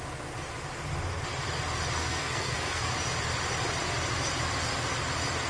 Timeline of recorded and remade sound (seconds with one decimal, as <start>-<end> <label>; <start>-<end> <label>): 0.0-2.0 recorded; 2.0-2.9 remade; 2.9-5.5 recorded